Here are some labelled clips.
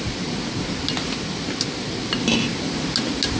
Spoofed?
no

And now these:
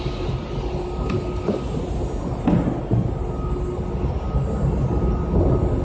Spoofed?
no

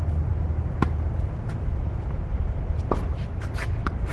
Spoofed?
no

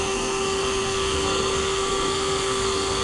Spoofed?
yes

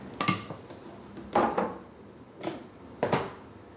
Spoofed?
no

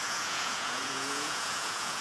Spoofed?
yes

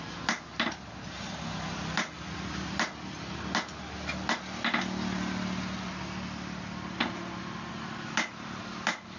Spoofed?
no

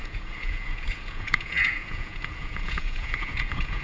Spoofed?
yes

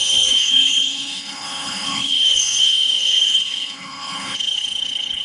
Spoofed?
yes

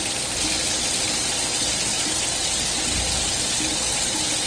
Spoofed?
no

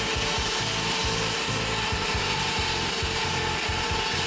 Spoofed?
no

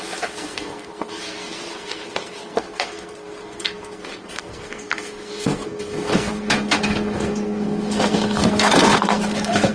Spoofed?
yes